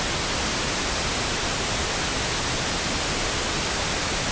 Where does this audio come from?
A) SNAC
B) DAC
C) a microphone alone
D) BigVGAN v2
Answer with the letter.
C